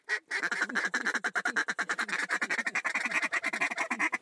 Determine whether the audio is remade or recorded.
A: recorded